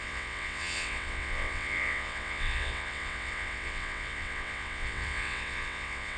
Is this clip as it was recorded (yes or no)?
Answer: no